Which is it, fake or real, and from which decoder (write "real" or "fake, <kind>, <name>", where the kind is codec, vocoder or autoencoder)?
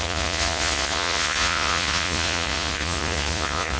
fake, vocoder, Vocos